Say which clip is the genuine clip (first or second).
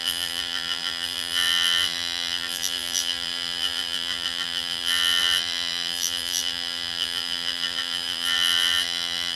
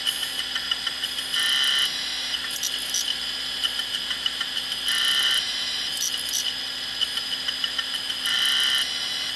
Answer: second